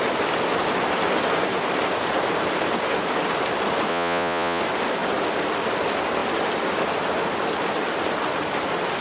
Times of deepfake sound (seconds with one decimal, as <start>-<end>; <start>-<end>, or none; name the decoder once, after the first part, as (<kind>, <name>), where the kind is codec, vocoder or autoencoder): 3.9-4.6 (vocoder, Vocos)